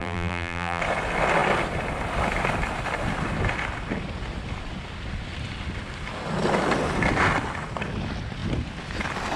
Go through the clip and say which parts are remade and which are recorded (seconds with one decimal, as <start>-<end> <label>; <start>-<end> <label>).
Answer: 0.0-0.8 remade; 0.8-9.4 recorded